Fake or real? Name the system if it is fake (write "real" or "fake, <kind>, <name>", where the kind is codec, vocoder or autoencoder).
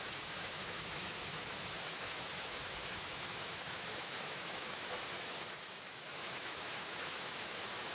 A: fake, autoencoder, DAC-VAE